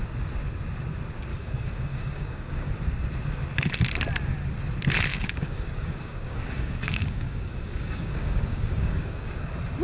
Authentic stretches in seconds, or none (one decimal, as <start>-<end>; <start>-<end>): 0.0-1.3; 2.7-5.1; 9.4-9.8